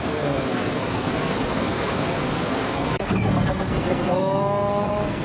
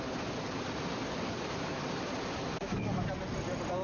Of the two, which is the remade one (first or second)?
first